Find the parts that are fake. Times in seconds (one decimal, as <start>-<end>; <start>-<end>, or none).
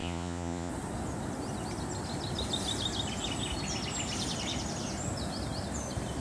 0.0-0.7